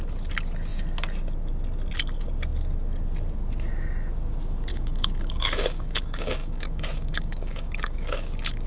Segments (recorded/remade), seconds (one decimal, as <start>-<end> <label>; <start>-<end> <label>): 0.0-4.7 recorded; 4.7-8.7 remade